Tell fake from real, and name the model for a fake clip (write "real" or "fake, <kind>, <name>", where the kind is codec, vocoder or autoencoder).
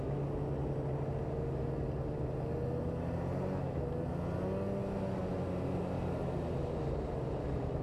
real